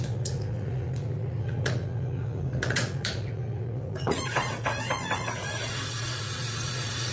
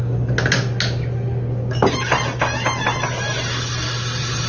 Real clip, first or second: second